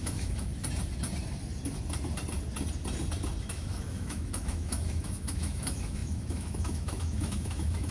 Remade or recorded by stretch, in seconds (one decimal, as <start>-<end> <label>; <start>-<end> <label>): 0.0-0.5 remade; 0.5-3.4 recorded; 3.4-7.9 remade